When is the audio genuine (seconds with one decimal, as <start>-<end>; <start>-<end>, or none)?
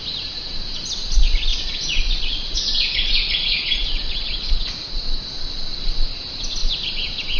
0.0-1.5; 4.7-7.4